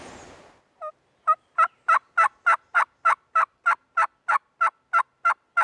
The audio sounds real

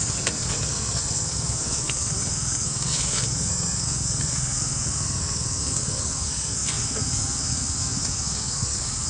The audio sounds fake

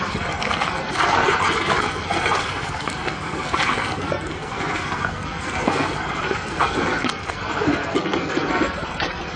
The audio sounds fake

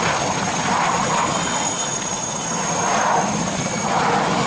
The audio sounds real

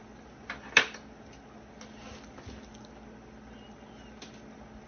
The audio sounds real